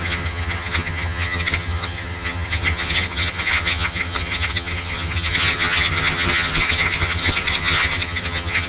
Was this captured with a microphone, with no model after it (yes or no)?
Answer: no